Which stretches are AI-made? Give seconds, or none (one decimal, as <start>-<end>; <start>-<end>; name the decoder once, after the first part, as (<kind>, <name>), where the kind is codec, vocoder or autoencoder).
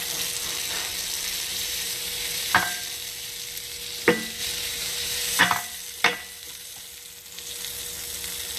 1.5-2.8 (vocoder, BigVGAN v2); 4.4-5.4